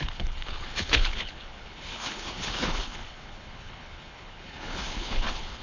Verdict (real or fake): fake